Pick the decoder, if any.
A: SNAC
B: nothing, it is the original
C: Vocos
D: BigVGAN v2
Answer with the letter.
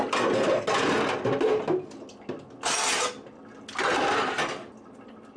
B